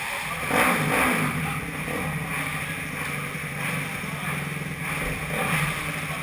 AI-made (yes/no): no